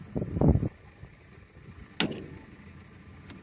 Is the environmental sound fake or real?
real